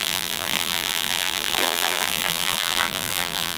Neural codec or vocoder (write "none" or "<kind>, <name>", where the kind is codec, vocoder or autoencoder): vocoder, BigVGAN v2